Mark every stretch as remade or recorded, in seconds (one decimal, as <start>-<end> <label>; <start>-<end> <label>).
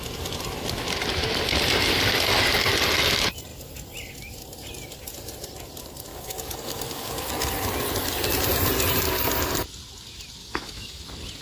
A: 0.0-6.1 recorded; 6.1-7.3 remade; 7.3-10.4 recorded; 10.4-11.0 remade; 11.0-11.4 recorded